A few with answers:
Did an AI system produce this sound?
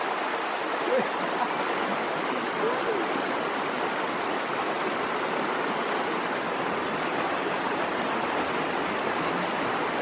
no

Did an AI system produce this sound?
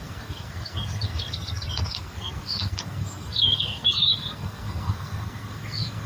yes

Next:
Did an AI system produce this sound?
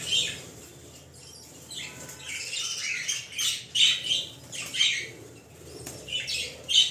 no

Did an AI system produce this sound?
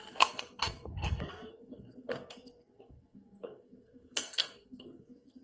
yes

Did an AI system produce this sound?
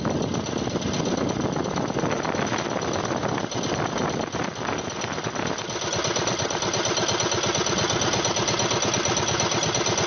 no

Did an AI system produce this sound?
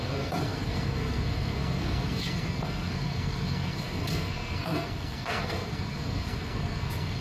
yes